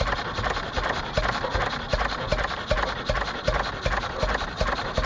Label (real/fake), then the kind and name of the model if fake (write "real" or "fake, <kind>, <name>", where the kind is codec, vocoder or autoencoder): real